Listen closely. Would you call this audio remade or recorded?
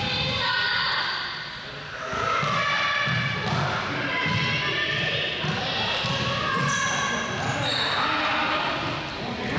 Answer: recorded